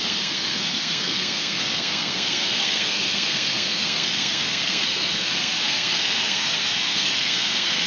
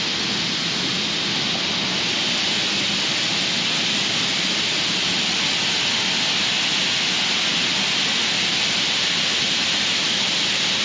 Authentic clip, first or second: second